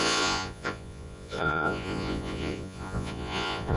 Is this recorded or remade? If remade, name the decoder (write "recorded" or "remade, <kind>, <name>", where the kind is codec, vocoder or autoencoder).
remade, vocoder, Vocos